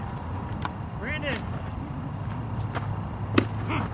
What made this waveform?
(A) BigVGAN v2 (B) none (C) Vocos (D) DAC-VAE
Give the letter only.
B